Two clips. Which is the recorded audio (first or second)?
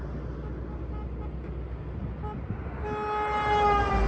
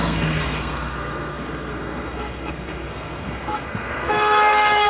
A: first